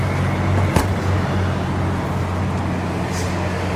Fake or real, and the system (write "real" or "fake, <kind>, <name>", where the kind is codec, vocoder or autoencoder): real